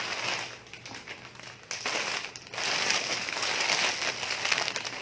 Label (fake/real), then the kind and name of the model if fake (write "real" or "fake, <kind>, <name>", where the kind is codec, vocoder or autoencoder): real